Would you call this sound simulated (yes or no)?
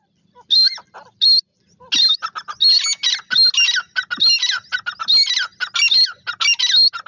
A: no